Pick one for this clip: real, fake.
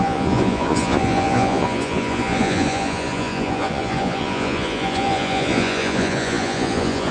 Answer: fake